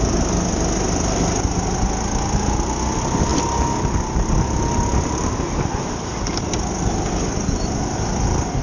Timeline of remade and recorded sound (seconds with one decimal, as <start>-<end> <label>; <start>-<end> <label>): 0.0-8.6 recorded